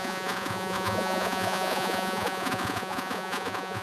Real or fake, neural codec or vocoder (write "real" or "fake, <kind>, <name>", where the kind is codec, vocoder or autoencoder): fake, vocoder, Vocos